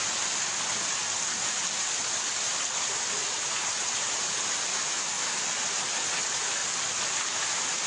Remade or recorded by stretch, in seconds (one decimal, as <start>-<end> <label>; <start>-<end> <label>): 0.0-4.7 recorded; 4.7-5.4 remade; 5.4-7.9 recorded